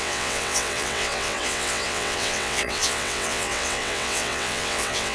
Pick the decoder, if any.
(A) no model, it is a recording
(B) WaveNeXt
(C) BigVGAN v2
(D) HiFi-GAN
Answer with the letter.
B